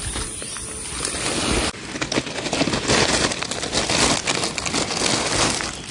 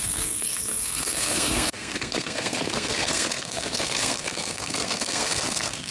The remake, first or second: second